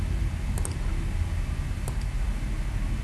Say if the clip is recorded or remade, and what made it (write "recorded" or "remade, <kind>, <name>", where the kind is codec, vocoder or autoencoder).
recorded